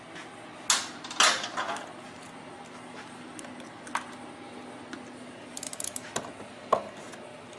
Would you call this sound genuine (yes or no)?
yes